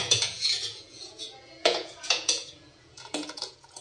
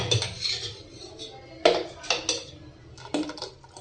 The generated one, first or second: first